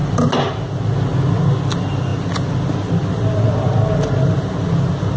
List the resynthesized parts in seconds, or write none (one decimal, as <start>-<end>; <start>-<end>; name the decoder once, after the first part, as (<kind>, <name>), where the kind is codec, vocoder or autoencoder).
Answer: none